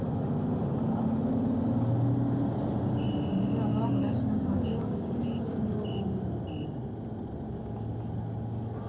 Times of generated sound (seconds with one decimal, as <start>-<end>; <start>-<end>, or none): 3.7-5.6